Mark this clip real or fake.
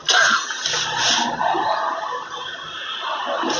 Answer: real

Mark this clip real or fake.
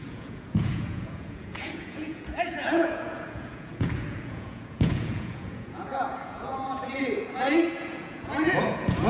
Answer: fake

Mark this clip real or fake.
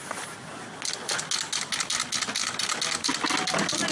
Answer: real